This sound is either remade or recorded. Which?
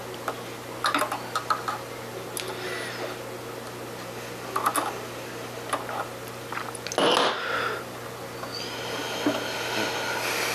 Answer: recorded